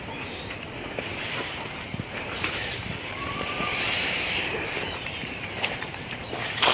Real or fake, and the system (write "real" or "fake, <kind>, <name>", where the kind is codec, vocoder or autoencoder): fake, vocoder, BigVGAN v2